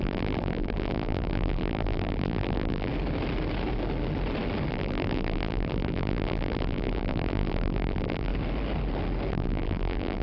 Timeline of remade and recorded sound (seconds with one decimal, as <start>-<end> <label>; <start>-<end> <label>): 0.0-2.9 remade; 2.9-4.7 recorded; 4.7-8.3 remade; 8.3-9.3 recorded; 9.3-10.2 remade